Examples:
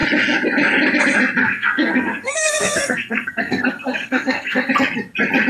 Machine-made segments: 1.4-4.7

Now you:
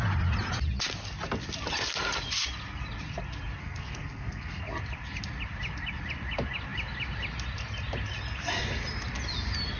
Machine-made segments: 3.6-4.6

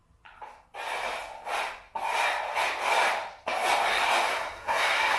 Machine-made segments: 4.3-5.2

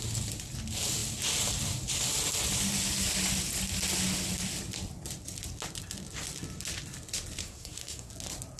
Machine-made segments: 7.4-8.1

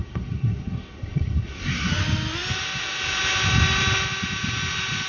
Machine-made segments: 0.0-1.9

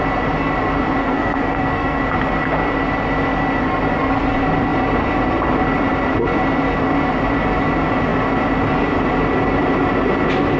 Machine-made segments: 1.0-2.0

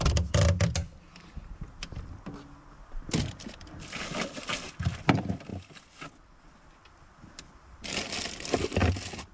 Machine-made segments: none

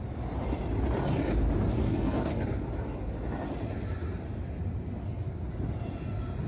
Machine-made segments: 1.8-2.4